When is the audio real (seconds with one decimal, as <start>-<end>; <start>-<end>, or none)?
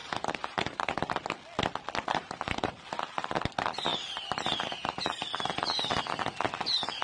1.1-2.0; 2.7-3.9; 5.3-7.0